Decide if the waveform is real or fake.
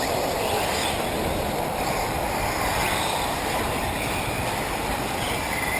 real